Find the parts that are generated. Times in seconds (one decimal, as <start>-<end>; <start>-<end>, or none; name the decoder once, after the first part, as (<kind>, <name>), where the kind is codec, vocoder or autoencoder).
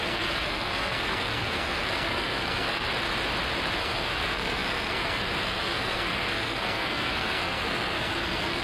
0.0-2.9 (codec, SNAC); 3.8-8.6